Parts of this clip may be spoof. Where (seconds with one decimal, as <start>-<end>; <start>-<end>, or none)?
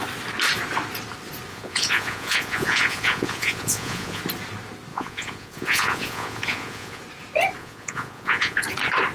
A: 1.5-4.2; 4.9-7.0; 7.6-8.6